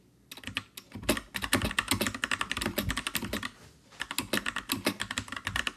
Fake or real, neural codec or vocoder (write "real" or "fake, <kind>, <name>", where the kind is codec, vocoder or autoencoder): real